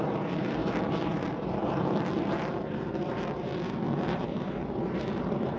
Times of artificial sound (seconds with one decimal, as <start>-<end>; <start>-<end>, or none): 0.0-3.5; 4.1-5.6